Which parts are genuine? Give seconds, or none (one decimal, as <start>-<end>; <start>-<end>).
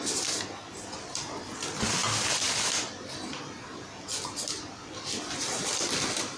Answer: 0.0-6.4